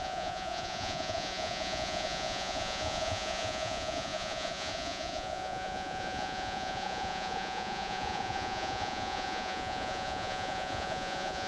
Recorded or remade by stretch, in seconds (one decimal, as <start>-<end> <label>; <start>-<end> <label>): 0.0-11.5 remade